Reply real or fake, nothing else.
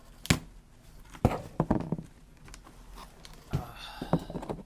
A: real